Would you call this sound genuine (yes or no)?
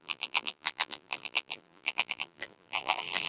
no